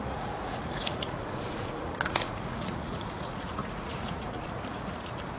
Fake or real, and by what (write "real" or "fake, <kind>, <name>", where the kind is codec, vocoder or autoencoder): fake, vocoder, Vocos